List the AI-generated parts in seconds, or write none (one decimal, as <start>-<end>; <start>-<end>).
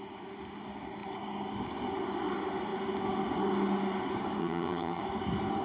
4.4-5.0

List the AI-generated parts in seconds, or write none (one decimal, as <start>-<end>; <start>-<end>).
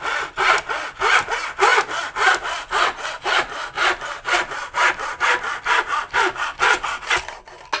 none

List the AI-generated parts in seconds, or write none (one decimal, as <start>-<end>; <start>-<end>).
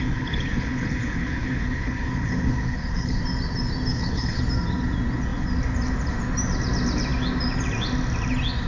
0.0-3.2; 3.9-4.4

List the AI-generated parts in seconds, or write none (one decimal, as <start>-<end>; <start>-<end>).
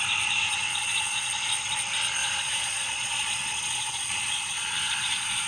0.7-1.3; 2.2-5.5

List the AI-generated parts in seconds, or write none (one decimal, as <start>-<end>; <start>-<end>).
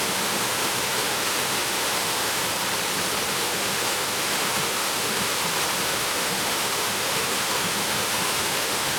0.0-2.4; 3.3-5.3; 5.8-9.0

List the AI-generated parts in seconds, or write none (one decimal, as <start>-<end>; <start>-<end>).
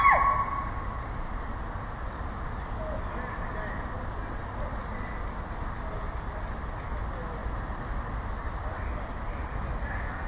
none